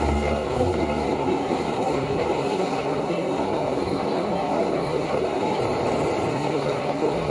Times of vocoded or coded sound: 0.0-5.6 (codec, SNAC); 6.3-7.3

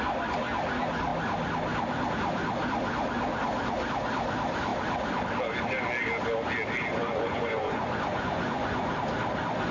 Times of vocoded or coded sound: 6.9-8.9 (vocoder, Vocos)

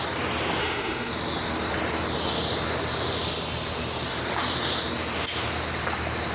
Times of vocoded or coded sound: 0.6-1.1 (autoencoder, DAC-VAE)

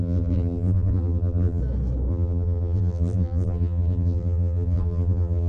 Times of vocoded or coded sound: 0.0-1.6 (vocoder, BigVGAN v2); 2.1-5.5

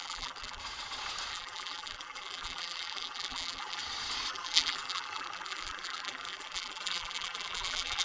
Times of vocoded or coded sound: 0.0-0.6 (vocoder, BigVGAN v2); 1.3-3.8; 4.3-8.0